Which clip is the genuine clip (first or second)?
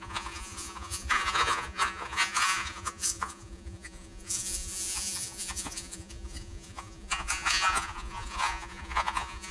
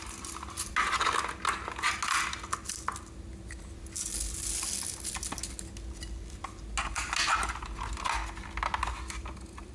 second